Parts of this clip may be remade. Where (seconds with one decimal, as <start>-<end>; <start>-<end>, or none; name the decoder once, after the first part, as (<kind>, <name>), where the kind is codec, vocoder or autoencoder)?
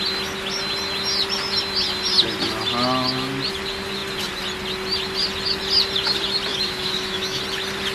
6.5-7.4 (autoencoder, DAC-VAE)